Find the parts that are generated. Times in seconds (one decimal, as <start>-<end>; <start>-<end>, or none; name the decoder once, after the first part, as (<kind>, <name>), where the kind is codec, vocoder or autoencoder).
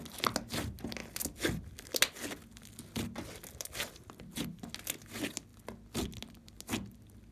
none